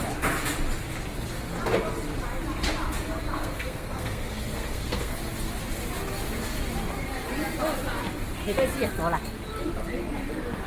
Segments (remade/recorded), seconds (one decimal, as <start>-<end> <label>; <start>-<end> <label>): 0.0-3.3 recorded; 3.3-5.2 remade; 5.2-10.7 recorded